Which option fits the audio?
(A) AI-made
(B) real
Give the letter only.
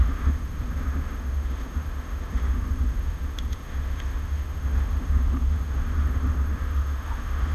A